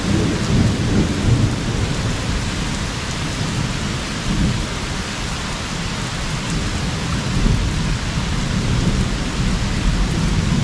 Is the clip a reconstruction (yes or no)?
no